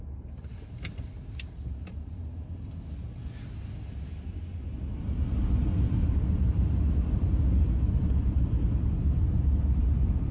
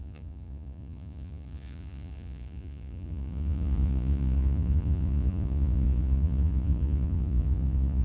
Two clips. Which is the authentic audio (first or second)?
first